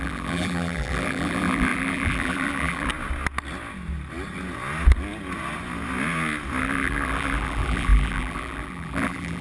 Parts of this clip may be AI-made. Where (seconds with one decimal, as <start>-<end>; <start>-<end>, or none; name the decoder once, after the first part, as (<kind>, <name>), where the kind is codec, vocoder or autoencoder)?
0.0-2.9 (vocoder, BigVGAN v2); 6.6-9.4